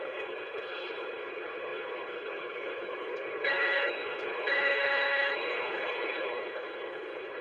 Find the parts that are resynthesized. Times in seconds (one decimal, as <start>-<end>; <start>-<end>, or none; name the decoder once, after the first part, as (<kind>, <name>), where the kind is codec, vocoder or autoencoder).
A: 0.0-7.4 (codec, HILCodec)